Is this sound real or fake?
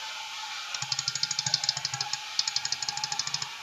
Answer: real